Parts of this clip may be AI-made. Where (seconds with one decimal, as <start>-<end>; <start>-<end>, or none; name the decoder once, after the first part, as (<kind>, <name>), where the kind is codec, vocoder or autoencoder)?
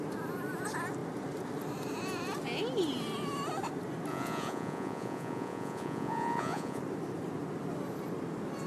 4.1-6.8 (vocoder, Vocos)